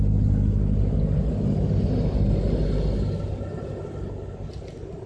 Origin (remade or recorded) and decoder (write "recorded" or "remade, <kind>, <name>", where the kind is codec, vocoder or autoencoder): recorded